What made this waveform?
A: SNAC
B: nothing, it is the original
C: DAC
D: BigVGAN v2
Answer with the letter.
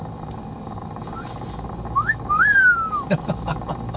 C